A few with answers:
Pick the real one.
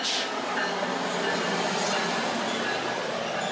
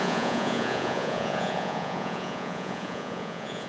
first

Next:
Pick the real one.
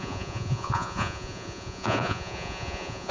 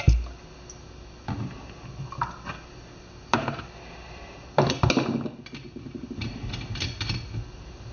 second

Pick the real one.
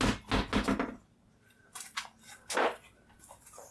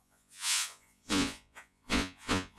first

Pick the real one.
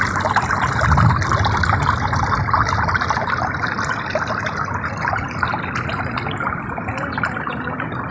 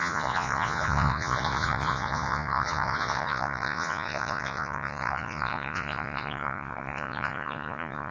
first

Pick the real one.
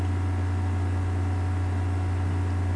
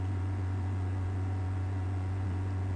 first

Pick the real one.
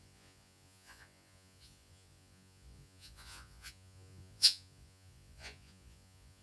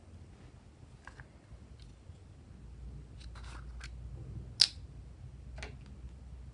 second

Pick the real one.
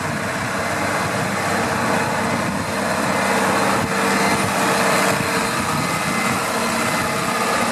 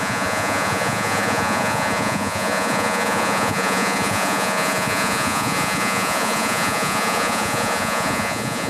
first